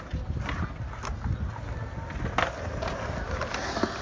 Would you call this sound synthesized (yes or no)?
no